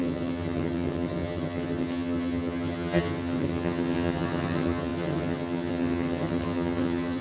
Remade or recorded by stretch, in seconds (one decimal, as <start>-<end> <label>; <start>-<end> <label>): 0.0-7.2 remade